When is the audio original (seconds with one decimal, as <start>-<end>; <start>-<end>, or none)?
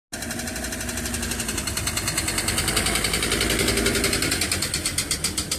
0.0-2.0; 2.7-5.6